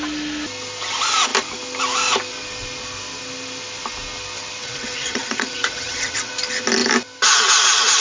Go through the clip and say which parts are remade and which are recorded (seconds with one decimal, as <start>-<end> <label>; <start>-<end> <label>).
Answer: 0.0-4.6 recorded; 4.6-6.3 remade; 6.3-8.0 recorded